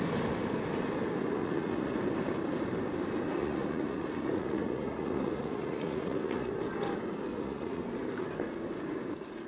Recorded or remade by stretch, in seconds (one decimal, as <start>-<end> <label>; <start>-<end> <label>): 0.0-1.4 recorded; 1.4-2.0 remade; 2.0-3.4 recorded; 3.4-6.5 remade; 6.5-7.3 recorded; 7.3-7.8 remade; 7.8-9.5 recorded